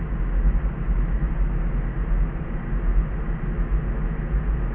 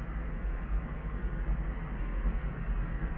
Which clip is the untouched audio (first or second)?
first